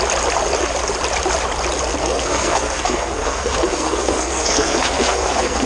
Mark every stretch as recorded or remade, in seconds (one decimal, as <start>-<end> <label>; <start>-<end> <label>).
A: 0.0-2.0 recorded; 2.0-5.7 remade